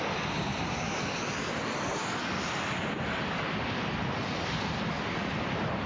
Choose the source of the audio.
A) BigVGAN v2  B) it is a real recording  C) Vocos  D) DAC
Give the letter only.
B